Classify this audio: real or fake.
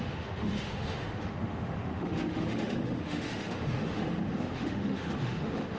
fake